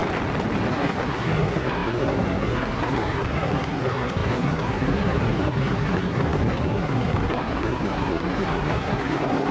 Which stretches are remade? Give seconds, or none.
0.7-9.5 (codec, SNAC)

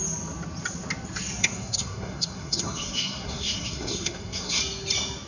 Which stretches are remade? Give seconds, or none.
1.4-4.6 (codec, SNAC)

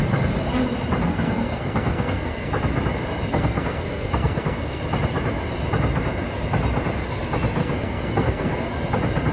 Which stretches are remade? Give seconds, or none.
1.1-2.5 (codec, SNAC); 3.3-4.8; 7.6-8.7